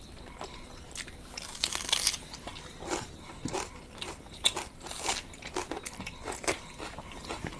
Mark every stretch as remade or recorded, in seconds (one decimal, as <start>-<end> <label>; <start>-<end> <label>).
0.0-7.6 recorded